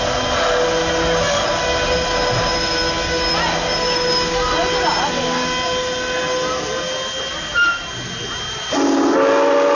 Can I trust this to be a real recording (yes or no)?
yes